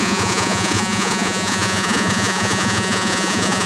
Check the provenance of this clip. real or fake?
fake